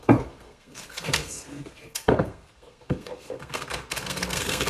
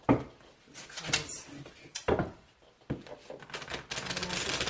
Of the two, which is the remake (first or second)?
first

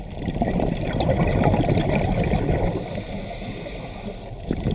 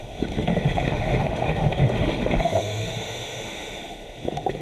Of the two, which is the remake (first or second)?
second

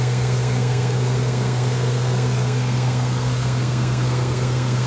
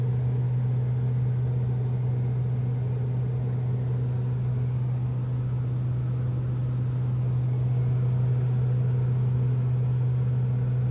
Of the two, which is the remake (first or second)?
first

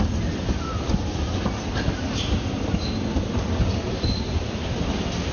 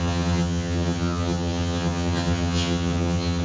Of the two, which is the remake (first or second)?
second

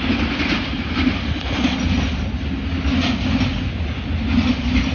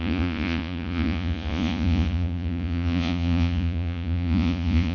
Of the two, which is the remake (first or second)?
second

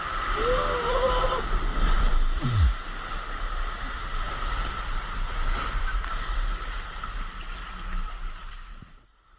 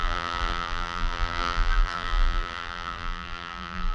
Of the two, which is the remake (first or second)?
second